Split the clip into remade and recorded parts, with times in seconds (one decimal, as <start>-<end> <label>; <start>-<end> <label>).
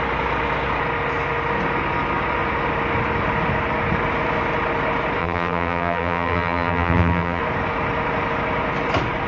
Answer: 0.0-5.2 recorded; 5.2-7.4 remade; 7.4-9.3 recorded